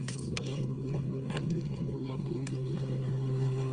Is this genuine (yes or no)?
no